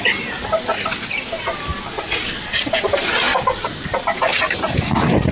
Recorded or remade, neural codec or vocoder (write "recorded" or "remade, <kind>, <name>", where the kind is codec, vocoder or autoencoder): recorded